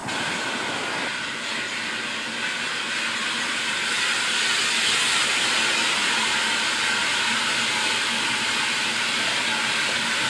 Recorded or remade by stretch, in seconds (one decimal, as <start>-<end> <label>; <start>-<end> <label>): 0.0-10.3 recorded